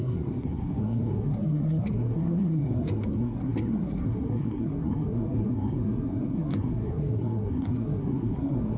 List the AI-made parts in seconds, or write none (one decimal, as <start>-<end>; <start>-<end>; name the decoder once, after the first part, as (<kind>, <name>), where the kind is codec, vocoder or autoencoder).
0.0-8.8 (codec, SNAC)